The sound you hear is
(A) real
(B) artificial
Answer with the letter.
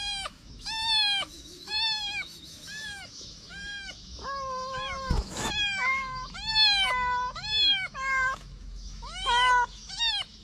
B